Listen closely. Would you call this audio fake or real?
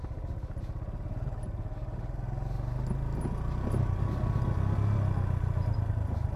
real